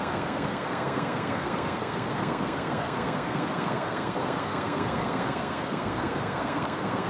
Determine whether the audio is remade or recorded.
remade